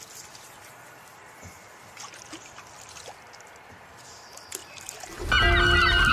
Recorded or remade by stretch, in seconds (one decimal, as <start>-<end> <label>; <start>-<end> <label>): 0.0-6.1 recorded